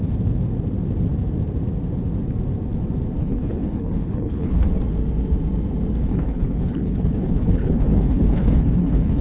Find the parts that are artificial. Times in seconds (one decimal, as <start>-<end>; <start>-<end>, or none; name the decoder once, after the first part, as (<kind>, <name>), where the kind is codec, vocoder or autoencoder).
3.2-4.6 (codec, HILCodec); 6.1-9.2